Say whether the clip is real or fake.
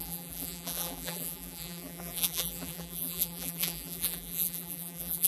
fake